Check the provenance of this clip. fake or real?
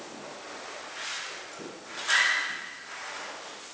real